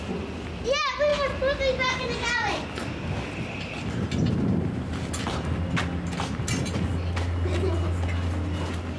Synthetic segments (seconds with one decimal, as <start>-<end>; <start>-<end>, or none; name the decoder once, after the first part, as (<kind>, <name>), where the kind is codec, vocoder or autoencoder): none